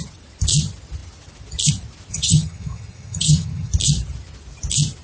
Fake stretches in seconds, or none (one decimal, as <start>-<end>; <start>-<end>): 2.1-3.7